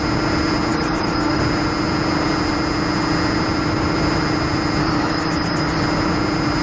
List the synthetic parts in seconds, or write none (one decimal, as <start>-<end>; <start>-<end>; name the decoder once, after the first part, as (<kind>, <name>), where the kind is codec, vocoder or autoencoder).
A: 0.7-1.4 (codec, DAC); 4.8-5.8